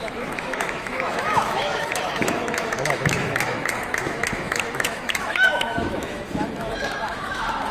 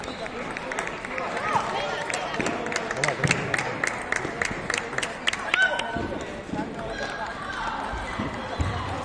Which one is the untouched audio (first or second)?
second